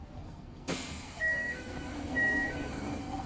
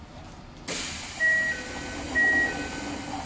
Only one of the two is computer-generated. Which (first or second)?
first